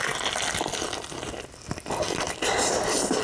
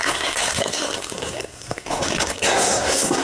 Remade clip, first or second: second